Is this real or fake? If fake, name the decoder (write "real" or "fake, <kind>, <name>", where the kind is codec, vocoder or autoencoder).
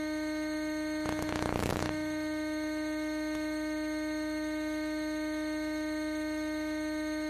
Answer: fake, autoencoder, DAC-VAE